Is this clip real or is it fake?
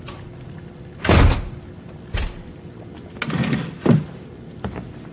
real